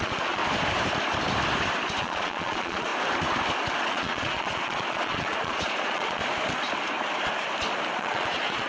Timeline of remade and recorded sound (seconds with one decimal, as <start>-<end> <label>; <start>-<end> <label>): 0.0-0.4 remade; 0.4-2.0 recorded; 2.0-2.9 remade; 2.9-3.8 recorded; 3.8-6.2 remade; 6.2-7.9 recorded; 7.9-8.7 remade